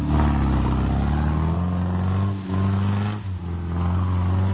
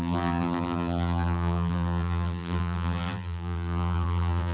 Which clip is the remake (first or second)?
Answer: second